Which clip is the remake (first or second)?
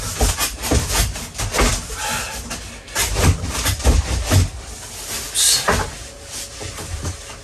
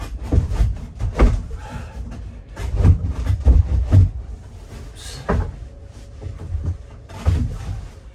second